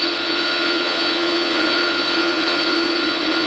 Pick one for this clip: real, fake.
fake